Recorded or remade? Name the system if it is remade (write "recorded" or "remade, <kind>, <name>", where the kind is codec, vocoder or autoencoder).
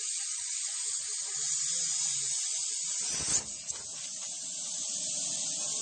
recorded